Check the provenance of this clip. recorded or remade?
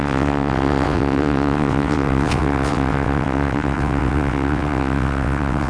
remade